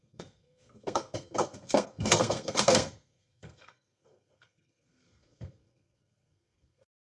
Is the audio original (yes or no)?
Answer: no